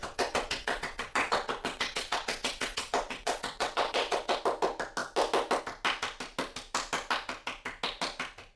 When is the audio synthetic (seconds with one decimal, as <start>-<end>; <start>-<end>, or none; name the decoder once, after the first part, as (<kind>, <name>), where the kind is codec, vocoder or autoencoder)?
0.0-4.4 (vocoder, WaveNeXt)